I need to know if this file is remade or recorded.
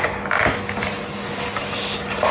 recorded